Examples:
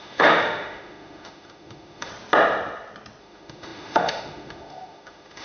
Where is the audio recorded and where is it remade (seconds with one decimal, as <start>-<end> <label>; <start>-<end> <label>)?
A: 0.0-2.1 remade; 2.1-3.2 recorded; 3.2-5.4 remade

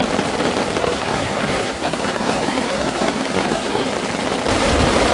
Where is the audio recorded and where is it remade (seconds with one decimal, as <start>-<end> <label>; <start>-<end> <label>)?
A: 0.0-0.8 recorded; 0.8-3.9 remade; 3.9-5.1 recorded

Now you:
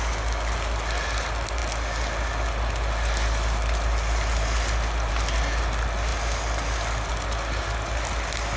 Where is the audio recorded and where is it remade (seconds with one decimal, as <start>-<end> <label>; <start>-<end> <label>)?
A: 0.0-8.6 recorded

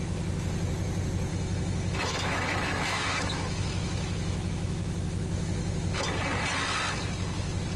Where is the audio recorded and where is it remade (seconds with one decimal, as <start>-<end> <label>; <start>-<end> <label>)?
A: 0.0-1.3 recorded; 1.3-6.0 remade; 6.0-7.8 recorded

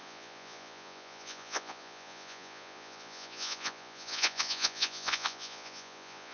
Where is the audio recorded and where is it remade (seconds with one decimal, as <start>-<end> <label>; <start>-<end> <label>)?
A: 0.0-6.3 remade